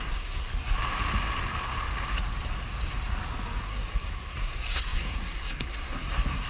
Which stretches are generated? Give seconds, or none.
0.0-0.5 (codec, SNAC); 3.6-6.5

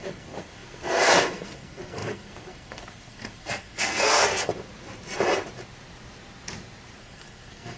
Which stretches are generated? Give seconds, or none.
0.0-4.5 (codec, SNAC); 7.0-7.8

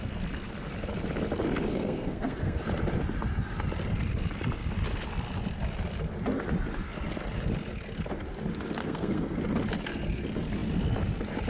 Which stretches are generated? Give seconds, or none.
1.7-2.6 (codec, SNAC); 8.8-9.4

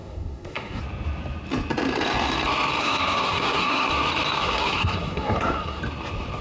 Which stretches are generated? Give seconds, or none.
0.0-0.8 (codec, SNAC); 2.8-3.9; 4.4-5.8

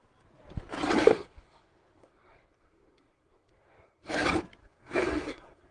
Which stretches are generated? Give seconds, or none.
1.1-4.1 (codec, SNAC); 4.6-5.7

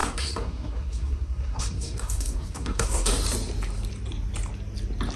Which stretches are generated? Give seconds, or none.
0.0-3.1 (codec, SNAC)

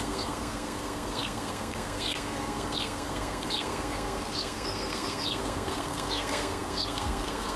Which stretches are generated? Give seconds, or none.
0.0-7.6 (codec, SNAC)

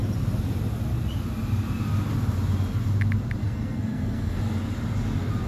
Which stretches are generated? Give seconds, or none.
3.4-4.4 (codec, SNAC)